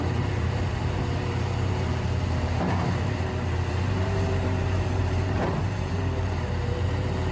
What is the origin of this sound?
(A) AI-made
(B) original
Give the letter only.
A